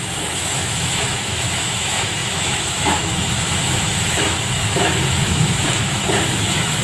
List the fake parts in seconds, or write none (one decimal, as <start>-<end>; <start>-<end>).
0.0-6.8